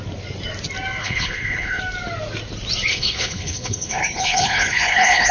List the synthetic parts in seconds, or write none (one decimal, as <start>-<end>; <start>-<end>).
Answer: 1.0-1.8; 2.9-5.3